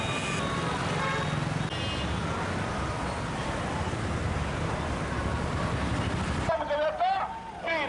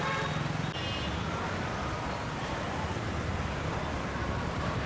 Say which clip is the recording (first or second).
first